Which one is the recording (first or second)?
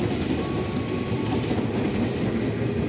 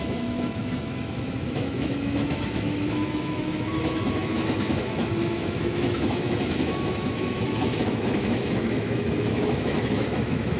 first